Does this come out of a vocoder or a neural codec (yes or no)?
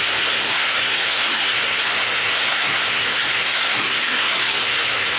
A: yes